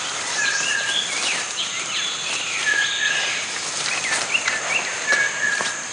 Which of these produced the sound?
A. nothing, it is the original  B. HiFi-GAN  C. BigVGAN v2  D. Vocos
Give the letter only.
A